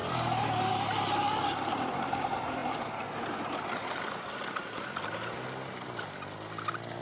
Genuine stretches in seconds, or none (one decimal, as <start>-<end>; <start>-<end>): 0.7-7.0